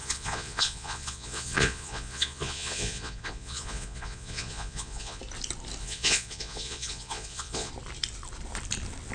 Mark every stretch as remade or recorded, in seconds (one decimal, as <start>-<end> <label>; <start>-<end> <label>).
0.0-5.2 remade; 5.2-5.8 recorded; 5.8-7.7 remade; 7.7-9.1 recorded